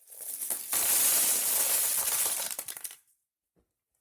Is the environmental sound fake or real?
real